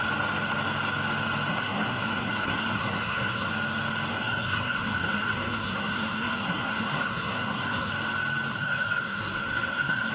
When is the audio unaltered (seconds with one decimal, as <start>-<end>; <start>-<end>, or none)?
0.0-1.5; 3.5-4.1; 7.9-8.5